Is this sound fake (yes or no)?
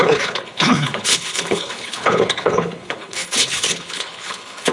yes